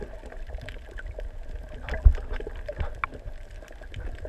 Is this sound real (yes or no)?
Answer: yes